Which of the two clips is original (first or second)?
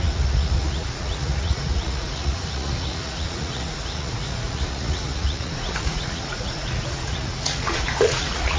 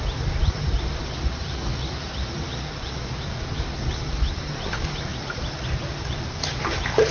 second